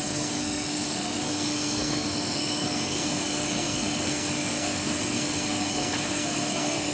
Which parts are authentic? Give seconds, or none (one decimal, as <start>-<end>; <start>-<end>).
none

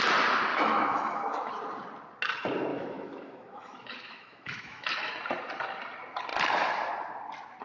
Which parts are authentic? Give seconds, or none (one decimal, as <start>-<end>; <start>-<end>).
0.0-0.5; 1.5-2.7; 5.1-7.6